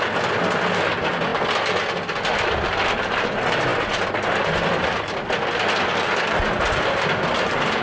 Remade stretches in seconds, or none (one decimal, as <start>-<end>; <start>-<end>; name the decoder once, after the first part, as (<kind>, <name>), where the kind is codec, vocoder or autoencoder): none